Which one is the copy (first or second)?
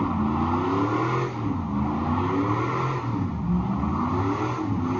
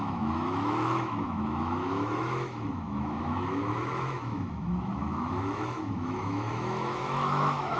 second